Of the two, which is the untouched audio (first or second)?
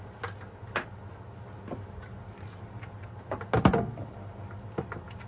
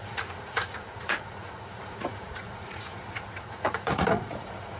first